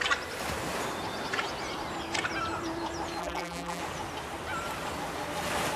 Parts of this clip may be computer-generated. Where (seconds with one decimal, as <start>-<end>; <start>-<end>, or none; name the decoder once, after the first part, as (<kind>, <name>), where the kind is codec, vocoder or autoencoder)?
3.2-3.8 (vocoder, BigVGAN v2)